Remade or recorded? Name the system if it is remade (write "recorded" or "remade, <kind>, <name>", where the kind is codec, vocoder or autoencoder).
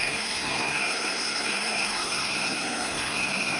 remade, codec, SNAC